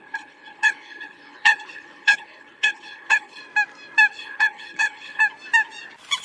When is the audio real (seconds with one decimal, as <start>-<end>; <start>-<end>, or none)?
3.4-4.1; 5.2-6.2